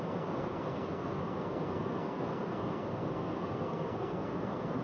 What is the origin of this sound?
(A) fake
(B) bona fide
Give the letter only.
A